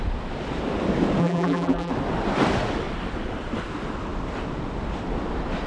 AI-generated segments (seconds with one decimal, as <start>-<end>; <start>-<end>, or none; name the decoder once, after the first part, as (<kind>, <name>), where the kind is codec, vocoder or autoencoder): 1.2-1.9 (vocoder, BigVGAN v2)